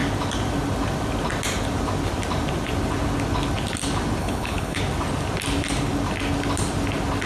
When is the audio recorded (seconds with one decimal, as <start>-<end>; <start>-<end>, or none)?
0.0-4.2; 4.8-7.3